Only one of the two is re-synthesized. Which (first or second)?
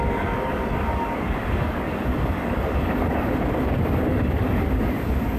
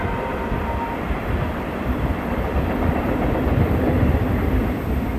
first